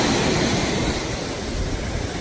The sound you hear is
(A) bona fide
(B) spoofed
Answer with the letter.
A